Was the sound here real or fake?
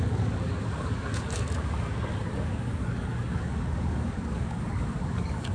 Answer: fake